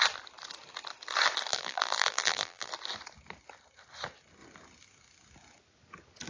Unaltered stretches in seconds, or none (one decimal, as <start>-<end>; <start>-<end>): 0.0-1.5; 2.7-6.3